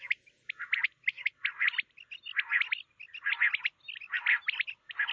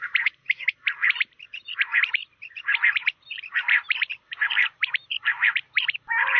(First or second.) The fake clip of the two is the second